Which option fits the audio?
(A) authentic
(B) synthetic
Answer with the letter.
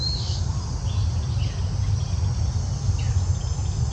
A